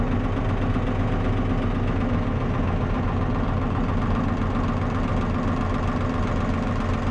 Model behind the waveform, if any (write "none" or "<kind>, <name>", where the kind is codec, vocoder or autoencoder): none